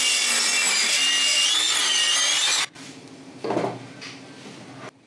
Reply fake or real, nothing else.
real